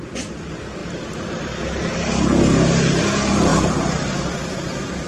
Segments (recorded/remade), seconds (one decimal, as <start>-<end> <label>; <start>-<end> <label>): 0.0-0.8 recorded; 0.8-3.0 remade; 3.0-3.5 recorded; 3.5-4.1 remade; 4.1-5.1 recorded